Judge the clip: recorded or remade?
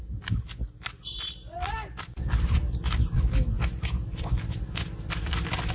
recorded